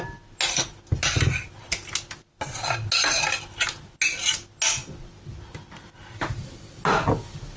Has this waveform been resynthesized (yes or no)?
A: no